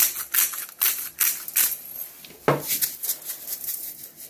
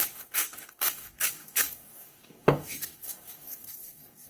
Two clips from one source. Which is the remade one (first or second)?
second